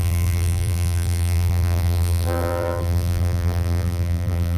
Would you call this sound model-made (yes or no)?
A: yes